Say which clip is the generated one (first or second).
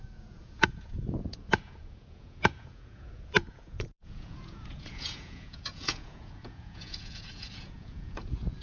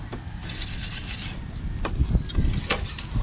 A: first